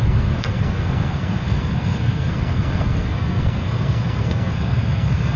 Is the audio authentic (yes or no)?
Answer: no